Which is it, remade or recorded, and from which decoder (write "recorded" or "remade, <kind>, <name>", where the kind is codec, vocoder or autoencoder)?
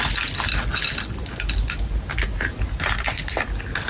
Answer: recorded